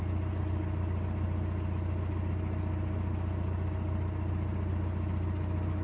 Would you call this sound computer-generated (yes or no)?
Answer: no